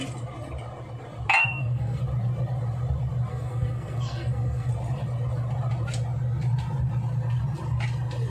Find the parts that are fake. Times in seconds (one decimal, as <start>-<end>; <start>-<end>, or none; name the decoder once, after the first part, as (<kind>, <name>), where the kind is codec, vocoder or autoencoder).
1.4-2.0 (codec, SNAC); 3.3-4.7

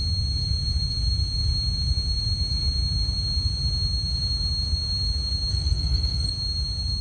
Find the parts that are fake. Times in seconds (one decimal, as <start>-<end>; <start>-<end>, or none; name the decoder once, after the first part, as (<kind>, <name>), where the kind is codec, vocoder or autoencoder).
5.5-6.3 (codec, SNAC)

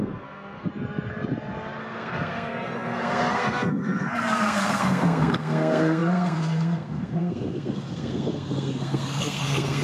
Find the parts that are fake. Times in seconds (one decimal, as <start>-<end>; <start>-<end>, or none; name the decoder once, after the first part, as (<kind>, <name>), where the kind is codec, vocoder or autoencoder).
0.0-0.7 (codec, SNAC); 1.8-9.8